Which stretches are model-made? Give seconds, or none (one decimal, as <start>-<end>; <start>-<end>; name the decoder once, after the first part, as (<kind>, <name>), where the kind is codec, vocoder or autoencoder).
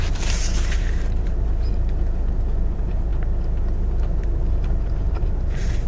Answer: 0.0-3.1 (vocoder, BigVGAN v2); 3.8-5.9